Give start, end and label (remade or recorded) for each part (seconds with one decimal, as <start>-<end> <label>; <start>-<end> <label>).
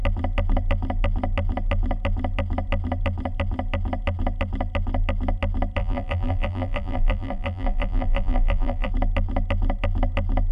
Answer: 0.0-5.8 recorded; 5.8-8.9 remade; 8.9-10.5 recorded